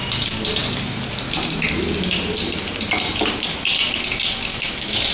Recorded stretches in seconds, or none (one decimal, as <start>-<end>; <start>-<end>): 0.0-4.5

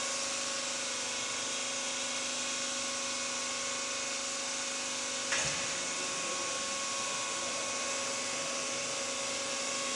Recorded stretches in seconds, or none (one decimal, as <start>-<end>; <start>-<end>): 0.0-9.9